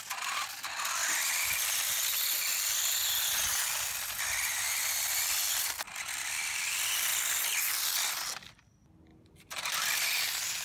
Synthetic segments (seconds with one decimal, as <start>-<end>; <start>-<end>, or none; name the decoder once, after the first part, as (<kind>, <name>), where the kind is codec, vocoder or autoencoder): none